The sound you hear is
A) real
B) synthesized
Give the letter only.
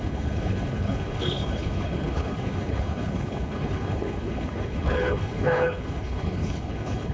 B